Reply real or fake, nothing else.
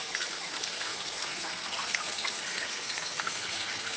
fake